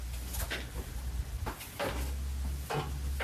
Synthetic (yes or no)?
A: no